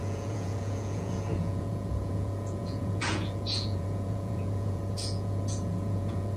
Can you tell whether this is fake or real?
fake